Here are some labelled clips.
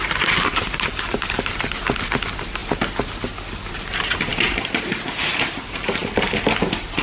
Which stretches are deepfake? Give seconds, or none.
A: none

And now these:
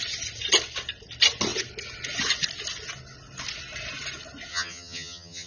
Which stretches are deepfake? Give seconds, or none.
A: 4.5-5.5 (vocoder, HiFi-GAN)

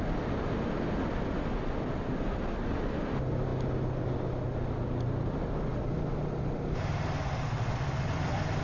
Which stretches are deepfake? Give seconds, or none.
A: none

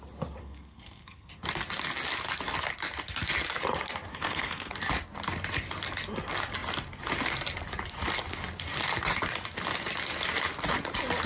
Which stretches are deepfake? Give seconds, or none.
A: 0.4-1.3 (codec, SNAC); 4.1-4.7

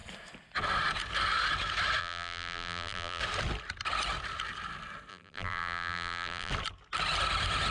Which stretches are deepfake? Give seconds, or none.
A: 2.0-3.2 (vocoder, BigVGAN v2); 5.1-6.5

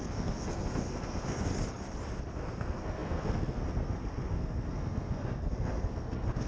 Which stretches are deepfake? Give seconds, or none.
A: 0.0-1.5 (codec, SNAC); 2.3-6.5

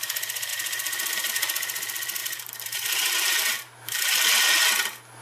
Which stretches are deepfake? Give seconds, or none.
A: 0.5-1.3 (vocoder, BigVGAN v2); 2.2-4.0

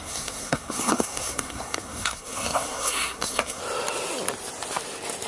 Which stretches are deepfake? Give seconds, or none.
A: 0.0-3.6 (codec, SNAC)